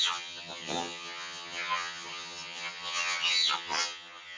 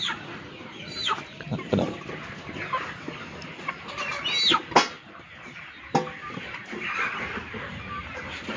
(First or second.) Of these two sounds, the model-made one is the first